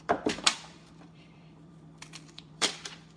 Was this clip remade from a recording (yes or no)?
yes